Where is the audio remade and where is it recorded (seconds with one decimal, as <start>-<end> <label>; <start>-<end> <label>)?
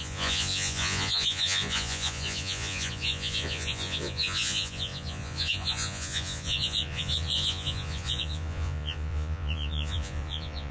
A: 0.0-10.7 remade